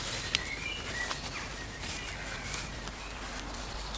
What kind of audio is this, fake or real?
fake